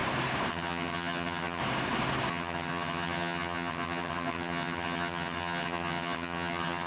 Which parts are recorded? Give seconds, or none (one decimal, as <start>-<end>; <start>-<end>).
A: 0.0-0.5; 1.6-2.3